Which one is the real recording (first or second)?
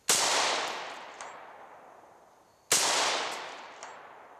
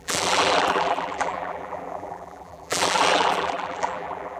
first